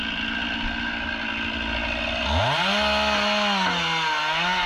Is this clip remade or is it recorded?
recorded